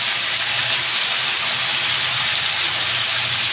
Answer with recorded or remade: recorded